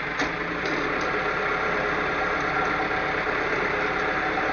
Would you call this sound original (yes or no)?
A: yes